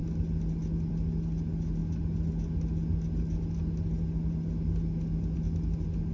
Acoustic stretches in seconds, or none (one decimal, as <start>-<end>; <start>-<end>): 0.0-6.1

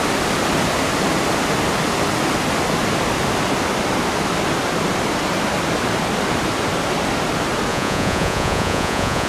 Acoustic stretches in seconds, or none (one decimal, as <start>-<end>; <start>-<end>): 0.0-7.7